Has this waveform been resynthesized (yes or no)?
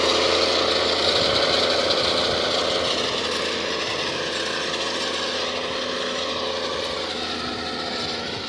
no